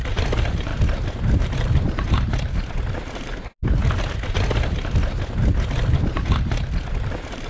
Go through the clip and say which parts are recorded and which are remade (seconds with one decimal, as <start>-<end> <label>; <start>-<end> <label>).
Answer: 0.0-0.7 remade; 0.7-1.4 recorded; 1.4-3.8 remade; 3.8-6.8 recorded; 6.8-7.5 remade